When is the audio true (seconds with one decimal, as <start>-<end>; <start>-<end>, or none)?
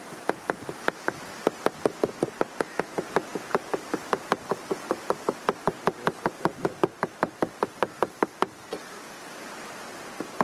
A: 0.0-10.4